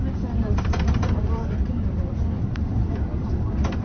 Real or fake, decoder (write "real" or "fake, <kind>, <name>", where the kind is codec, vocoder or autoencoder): fake, vocoder, BigVGAN v2